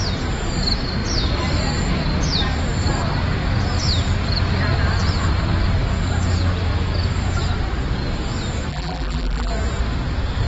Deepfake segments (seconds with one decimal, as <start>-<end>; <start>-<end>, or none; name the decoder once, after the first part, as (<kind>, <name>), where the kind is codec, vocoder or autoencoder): 8.7-9.5 (vocoder, BigVGAN v2)

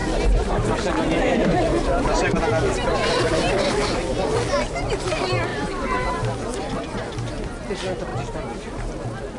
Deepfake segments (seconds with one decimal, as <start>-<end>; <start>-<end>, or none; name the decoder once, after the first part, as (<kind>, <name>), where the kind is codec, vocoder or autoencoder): 0.0-3.5 (vocoder, BigVGAN v2); 5.5-6.1; 8.1-8.7

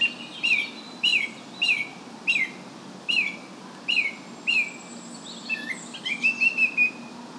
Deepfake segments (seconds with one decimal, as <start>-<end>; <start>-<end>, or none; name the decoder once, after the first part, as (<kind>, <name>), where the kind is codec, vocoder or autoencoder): none